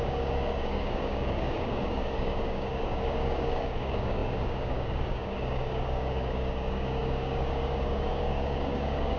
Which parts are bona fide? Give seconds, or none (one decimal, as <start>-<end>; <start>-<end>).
none

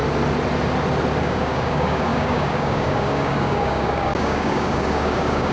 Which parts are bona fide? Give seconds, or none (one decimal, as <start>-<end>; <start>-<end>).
0.0-1.2

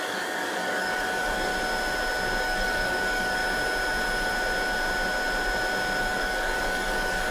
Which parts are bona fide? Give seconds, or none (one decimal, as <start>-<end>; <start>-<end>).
1.5-2.4; 3.4-6.0

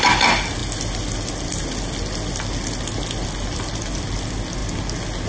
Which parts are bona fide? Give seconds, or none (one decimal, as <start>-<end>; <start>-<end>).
0.0-5.3

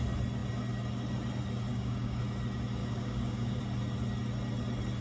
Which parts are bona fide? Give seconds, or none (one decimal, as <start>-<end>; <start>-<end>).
0.0-1.7; 2.2-2.8; 3.6-5.0

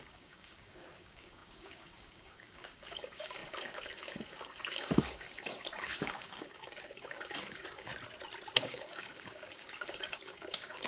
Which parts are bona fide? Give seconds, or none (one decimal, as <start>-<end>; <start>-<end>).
7.9-8.6

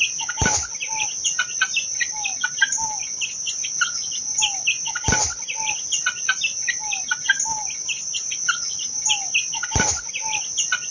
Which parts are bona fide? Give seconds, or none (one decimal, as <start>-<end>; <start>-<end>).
0.0-10.9